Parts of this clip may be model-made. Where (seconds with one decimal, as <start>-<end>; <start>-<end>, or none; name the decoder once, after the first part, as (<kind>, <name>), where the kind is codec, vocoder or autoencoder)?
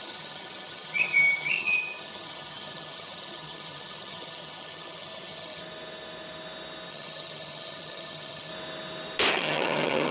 0.0-5.6 (vocoder, HiFi-GAN); 6.9-8.5; 9.3-10.1